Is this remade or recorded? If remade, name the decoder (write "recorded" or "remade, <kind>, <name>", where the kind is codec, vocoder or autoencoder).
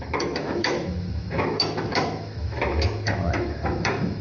remade, autoencoder, DAC-VAE